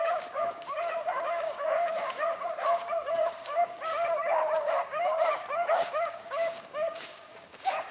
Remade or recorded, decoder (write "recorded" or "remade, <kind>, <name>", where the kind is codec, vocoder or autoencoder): remade, codec, DAC